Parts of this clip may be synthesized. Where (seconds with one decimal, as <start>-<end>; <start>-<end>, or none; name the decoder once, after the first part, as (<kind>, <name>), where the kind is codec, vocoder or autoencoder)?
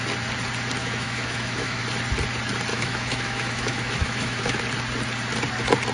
0.8-1.8 (autoencoder, DAC-VAE); 2.7-4.6